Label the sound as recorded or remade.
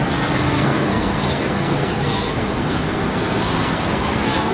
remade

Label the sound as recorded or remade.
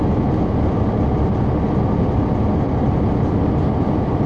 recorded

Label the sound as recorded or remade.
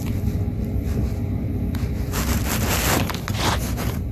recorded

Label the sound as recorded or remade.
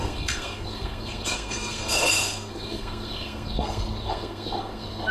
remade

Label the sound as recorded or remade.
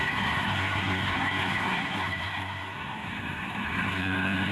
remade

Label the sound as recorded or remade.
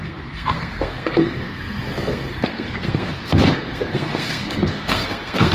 remade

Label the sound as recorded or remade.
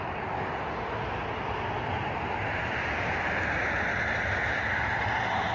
recorded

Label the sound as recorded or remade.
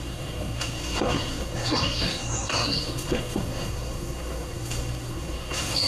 remade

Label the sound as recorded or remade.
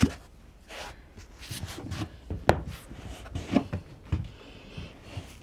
recorded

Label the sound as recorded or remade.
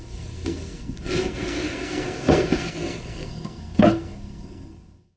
remade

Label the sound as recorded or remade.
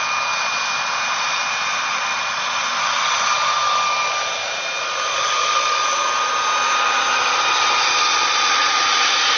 recorded